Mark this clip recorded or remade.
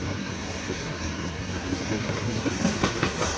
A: remade